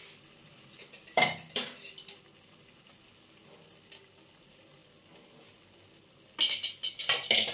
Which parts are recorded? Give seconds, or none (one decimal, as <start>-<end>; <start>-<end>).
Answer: 1.9-7.5